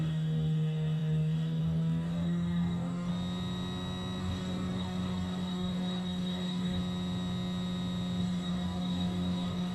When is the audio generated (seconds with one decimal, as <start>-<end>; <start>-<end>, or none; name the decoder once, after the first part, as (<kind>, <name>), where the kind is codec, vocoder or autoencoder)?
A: 0.0-3.1 (codec, DAC); 4.2-6.8; 8.2-9.7